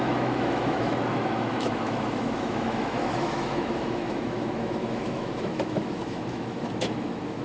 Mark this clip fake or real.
fake